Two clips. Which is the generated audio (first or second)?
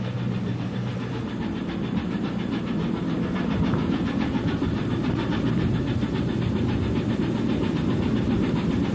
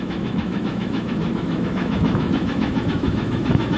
second